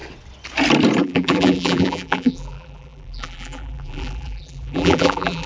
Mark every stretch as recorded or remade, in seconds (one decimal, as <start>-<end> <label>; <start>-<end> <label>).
0.0-1.0 recorded; 1.0-5.5 remade